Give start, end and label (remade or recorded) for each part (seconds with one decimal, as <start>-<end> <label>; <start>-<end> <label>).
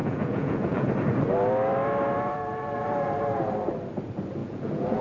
0.0-0.9 remade; 0.9-4.4 recorded; 4.4-5.0 remade